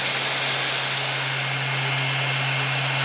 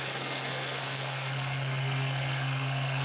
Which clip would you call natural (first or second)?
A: first